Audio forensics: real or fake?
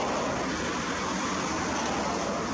real